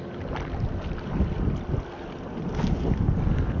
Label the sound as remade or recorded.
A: recorded